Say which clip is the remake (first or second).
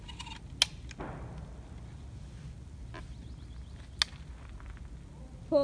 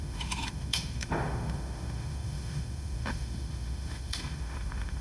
second